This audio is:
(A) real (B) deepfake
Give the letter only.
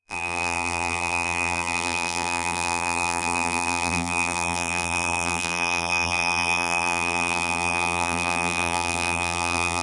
B